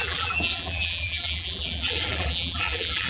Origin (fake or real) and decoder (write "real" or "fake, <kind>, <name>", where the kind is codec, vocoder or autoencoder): fake, vocoder, BigVGAN v2